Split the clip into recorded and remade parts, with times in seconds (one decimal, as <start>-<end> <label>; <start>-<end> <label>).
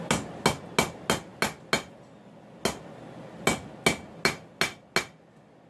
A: 0.0-5.7 recorded